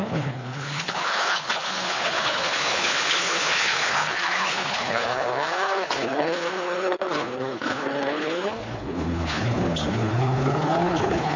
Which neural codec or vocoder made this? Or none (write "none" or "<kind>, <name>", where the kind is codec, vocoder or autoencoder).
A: codec, HILCodec